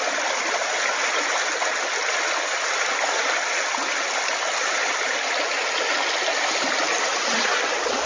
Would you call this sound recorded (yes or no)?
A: yes